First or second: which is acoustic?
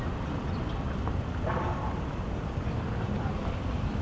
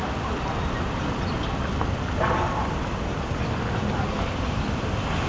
second